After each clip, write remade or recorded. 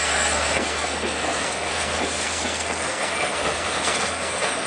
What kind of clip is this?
remade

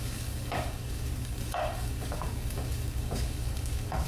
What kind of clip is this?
remade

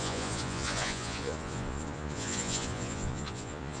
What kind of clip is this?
remade